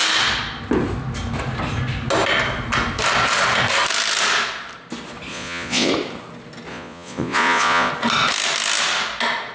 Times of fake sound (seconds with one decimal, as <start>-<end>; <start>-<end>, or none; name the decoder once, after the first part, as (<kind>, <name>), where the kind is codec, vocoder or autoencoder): 5.3-5.9 (vocoder, Vocos); 6.7-7.9